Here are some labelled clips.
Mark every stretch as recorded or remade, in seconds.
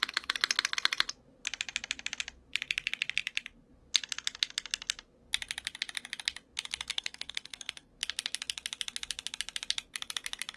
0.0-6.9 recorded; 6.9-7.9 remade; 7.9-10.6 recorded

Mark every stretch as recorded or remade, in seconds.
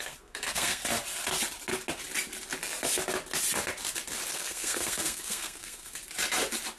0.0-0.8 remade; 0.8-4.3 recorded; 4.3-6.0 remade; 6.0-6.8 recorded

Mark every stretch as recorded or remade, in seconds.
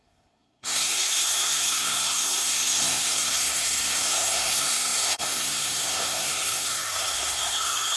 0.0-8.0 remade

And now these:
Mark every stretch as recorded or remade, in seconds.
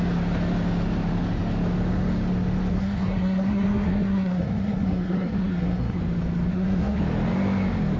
0.0-2.7 recorded; 2.7-6.0 remade; 6.0-6.5 recorded; 6.5-7.0 remade; 7.0-8.0 recorded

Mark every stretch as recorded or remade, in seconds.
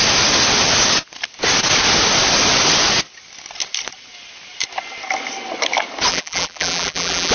0.0-6.1 recorded; 6.1-7.3 remade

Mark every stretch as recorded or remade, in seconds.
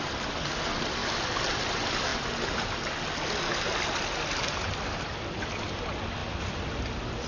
0.0-7.3 recorded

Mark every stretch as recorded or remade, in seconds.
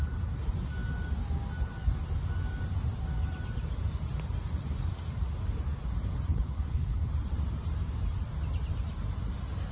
0.0-6.3 recorded; 6.3-7.1 remade; 7.1-9.7 recorded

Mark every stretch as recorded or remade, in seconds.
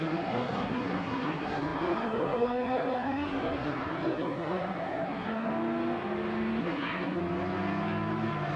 0.0-5.5 remade; 5.5-6.6 recorded; 6.6-7.2 remade; 7.2-8.6 recorded